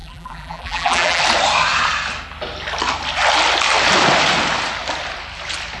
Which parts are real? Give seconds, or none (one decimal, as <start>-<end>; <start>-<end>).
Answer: 1.2-5.8